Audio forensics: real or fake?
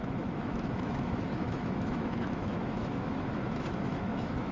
fake